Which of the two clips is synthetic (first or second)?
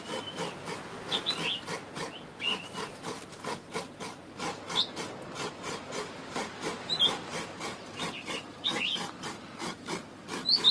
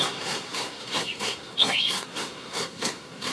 second